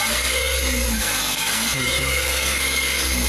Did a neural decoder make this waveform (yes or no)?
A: yes